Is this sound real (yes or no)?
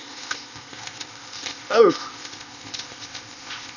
no